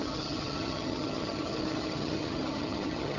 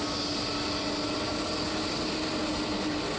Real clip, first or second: second